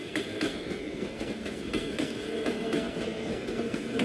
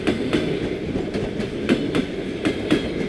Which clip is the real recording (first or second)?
second